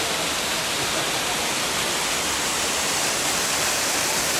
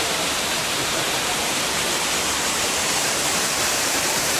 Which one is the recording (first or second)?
first